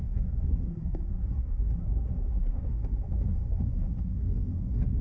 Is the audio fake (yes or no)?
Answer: yes